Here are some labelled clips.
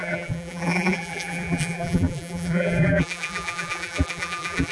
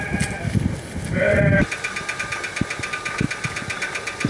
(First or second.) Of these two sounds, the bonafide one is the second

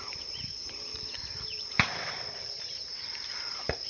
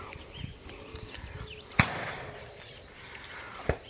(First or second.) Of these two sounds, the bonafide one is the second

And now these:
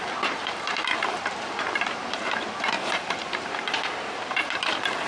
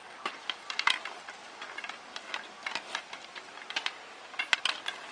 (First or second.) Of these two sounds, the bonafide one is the second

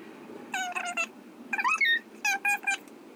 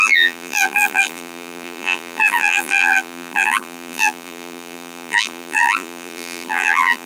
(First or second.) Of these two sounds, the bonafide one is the first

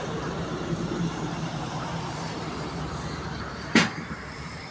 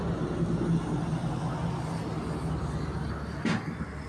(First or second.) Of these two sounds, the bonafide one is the second